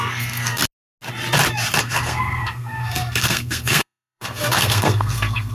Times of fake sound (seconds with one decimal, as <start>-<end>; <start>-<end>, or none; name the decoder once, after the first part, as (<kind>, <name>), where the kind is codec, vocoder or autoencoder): 0.0-0.6 (codec, SNAC); 1.8-5.5